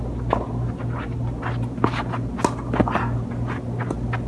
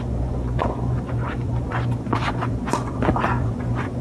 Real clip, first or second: first